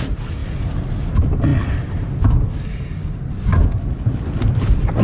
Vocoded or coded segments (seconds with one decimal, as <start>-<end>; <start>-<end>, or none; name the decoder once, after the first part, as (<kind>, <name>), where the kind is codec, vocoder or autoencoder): none